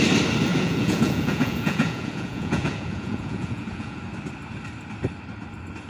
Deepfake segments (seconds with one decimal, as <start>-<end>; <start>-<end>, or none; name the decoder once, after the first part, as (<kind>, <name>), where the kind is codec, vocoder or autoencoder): 0.5-4.0 (vocoder, Vocos)